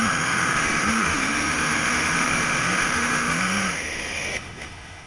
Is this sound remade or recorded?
remade